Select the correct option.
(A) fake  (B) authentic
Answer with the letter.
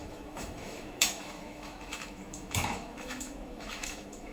A